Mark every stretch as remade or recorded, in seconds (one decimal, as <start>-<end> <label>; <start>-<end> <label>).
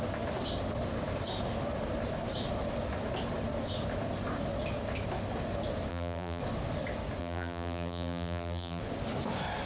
0.0-5.9 recorded; 5.9-6.4 remade; 6.4-7.2 recorded; 7.2-8.8 remade; 8.8-9.7 recorded